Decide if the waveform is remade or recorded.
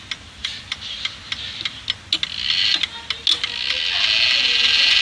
recorded